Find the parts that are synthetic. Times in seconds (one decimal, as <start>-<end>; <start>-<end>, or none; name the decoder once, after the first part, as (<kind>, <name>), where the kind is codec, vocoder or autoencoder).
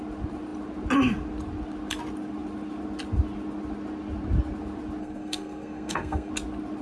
5.0-6.3 (codec, SNAC)